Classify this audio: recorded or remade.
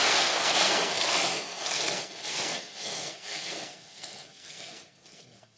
remade